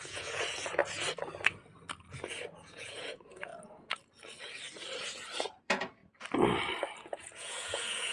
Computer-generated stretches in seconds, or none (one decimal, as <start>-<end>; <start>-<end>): 0.0-0.8; 2.6-3.5; 5.6-6.0; 7.0-8.1